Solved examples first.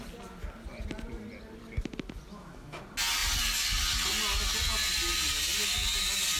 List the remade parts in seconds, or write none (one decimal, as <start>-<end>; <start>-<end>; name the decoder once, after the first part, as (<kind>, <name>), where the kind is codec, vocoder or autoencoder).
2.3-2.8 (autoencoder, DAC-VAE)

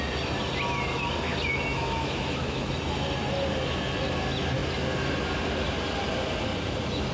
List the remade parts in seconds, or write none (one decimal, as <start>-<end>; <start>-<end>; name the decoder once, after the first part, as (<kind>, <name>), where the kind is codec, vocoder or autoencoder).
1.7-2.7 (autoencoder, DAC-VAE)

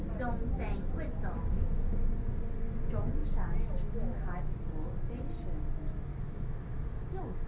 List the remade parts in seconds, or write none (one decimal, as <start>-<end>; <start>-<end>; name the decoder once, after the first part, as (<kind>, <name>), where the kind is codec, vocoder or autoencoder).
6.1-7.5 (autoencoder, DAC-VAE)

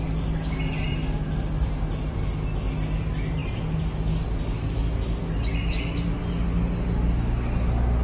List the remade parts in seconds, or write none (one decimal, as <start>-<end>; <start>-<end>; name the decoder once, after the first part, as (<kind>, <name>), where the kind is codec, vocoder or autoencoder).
none

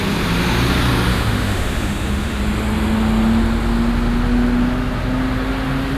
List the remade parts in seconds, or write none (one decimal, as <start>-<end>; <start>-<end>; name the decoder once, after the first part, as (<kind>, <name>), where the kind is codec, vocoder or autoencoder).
1.1-2.4 (autoencoder, DAC-VAE)